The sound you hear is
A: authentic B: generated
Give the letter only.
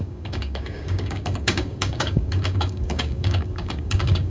B